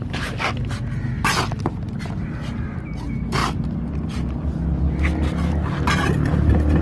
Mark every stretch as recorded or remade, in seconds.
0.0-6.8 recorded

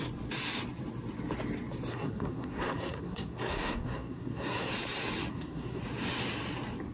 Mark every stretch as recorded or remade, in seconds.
0.0-1.9 recorded; 1.9-4.7 remade; 4.7-5.3 recorded; 5.3-5.8 remade; 5.8-6.9 recorded

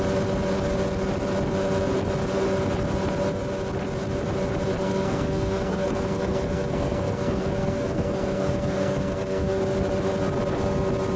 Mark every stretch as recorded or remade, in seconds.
0.0-4.8 recorded; 4.8-9.6 remade; 9.6-11.2 recorded